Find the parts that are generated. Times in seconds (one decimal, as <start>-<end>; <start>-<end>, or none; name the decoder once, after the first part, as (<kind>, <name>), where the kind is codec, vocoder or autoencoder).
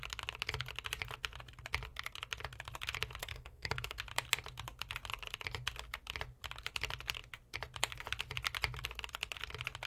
3.2-4.0 (codec, SNAC)